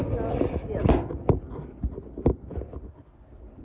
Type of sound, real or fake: real